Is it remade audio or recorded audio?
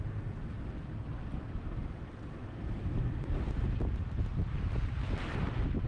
remade